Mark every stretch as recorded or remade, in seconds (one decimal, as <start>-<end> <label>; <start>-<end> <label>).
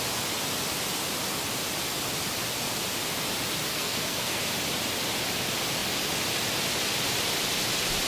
0.0-3.7 recorded; 3.7-4.4 remade; 4.4-8.1 recorded